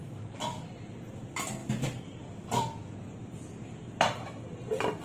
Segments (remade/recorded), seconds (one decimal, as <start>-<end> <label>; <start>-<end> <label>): 0.0-5.0 recorded